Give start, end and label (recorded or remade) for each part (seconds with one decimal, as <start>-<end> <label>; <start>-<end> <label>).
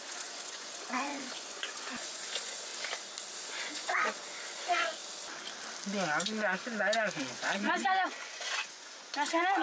0.0-2.7 remade; 2.7-3.4 recorded; 3.4-5.0 remade; 5.0-7.2 recorded; 7.2-9.6 remade